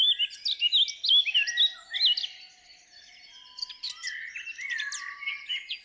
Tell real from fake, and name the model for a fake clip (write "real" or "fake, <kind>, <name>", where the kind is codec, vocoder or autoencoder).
real